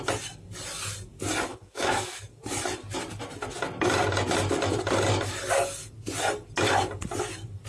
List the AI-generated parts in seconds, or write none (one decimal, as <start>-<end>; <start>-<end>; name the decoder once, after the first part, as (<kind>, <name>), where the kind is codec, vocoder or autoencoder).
1.5-2.2 (codec, DAC)